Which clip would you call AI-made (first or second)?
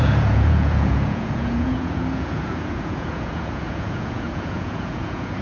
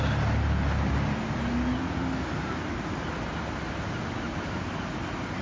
first